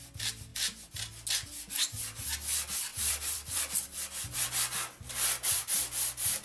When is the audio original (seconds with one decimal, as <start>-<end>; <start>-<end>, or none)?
0.0-2.9; 5.7-6.4